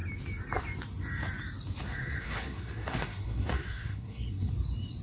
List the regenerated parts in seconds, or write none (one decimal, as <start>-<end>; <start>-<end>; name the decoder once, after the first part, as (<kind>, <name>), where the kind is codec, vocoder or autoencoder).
1.9-4.5 (codec, SNAC)